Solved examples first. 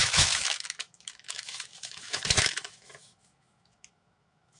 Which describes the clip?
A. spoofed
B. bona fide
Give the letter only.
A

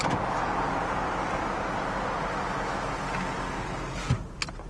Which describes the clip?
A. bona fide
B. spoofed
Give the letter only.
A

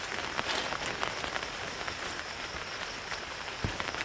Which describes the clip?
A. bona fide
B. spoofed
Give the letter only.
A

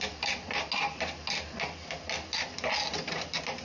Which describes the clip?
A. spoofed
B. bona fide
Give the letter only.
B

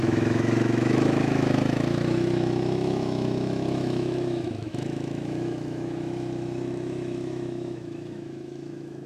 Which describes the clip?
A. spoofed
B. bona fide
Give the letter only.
A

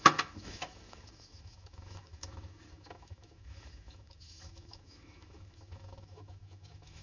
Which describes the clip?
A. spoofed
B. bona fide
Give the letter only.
A